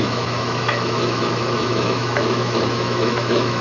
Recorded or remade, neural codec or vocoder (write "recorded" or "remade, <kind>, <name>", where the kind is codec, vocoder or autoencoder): remade, autoencoder, DAC-VAE